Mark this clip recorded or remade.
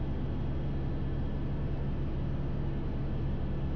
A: recorded